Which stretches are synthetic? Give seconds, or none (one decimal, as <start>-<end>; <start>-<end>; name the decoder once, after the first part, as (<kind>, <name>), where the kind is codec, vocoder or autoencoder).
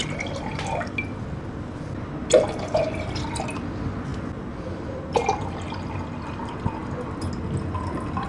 none